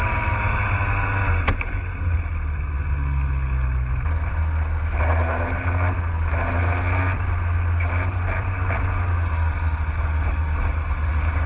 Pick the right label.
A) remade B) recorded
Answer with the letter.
B